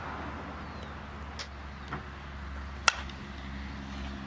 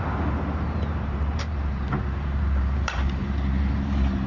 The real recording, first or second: first